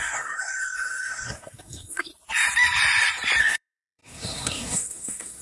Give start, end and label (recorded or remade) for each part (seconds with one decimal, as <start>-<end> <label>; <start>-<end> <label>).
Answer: 0.0-2.1 remade; 2.1-3.4 recorded; 3.4-5.4 remade

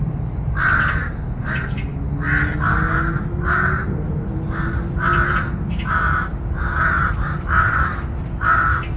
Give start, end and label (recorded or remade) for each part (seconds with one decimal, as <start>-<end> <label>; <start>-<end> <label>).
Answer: 0.0-9.0 recorded

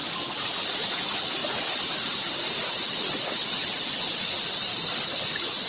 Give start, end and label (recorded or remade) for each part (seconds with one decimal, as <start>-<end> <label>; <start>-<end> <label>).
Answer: 0.0-0.5 remade; 0.5-1.4 recorded; 1.4-3.9 remade; 3.9-4.7 recorded; 4.7-5.7 remade

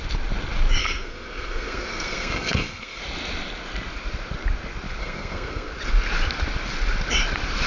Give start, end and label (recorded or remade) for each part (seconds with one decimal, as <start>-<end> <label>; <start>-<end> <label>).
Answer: 0.0-0.8 recorded; 0.8-3.0 remade; 3.0-5.0 recorded; 5.0-5.7 remade; 5.7-7.7 recorded